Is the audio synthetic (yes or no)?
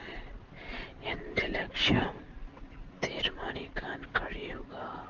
no